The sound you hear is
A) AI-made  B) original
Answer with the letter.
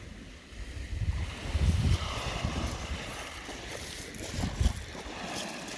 B